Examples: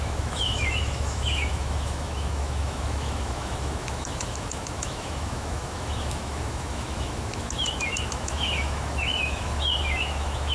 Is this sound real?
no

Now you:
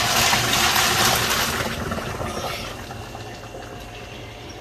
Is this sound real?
yes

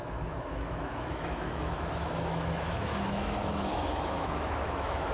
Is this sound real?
no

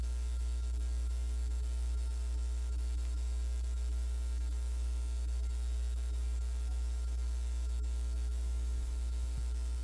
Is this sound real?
no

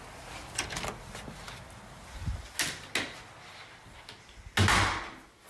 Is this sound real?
yes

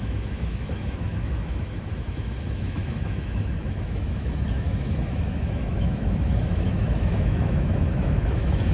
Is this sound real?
no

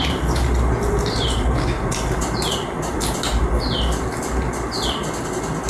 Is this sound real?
yes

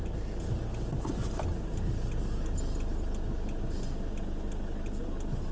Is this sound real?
yes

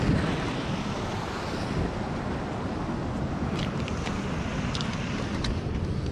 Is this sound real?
yes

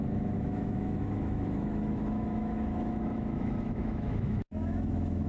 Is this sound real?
no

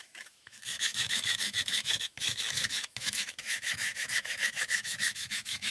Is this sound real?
no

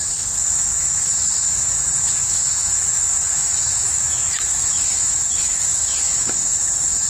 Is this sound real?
no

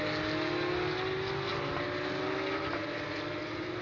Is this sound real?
yes